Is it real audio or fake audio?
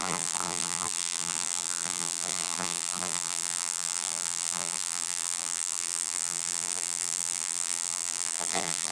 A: fake